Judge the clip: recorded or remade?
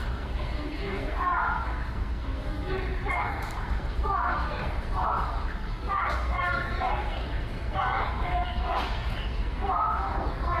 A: remade